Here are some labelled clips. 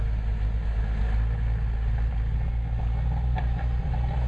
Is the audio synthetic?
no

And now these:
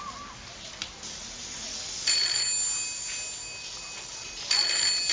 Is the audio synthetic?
no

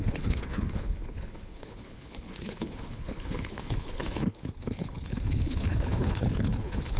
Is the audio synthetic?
yes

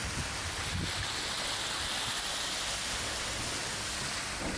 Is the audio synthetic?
no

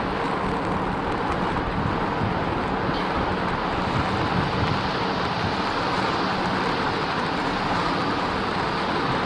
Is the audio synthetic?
no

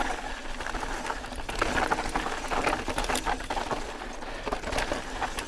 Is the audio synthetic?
no